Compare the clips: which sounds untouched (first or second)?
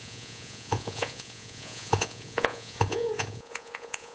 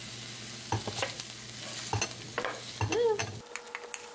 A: second